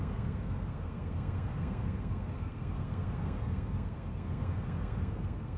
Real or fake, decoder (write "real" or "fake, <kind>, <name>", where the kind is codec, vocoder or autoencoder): fake, codec, SNAC